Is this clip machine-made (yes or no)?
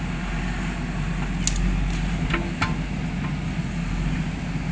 no